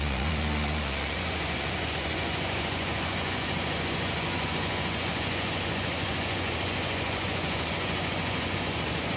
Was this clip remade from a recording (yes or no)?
yes